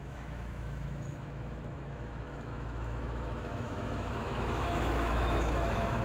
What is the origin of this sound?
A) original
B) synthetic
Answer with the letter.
B